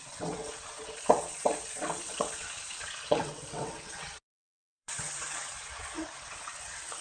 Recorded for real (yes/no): no